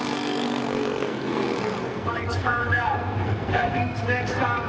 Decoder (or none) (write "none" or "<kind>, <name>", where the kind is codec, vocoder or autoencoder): codec, SNAC